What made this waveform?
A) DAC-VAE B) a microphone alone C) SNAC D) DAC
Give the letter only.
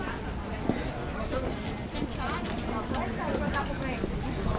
B